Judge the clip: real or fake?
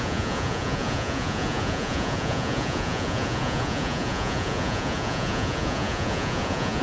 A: fake